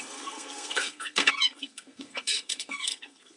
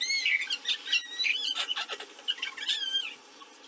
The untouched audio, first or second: second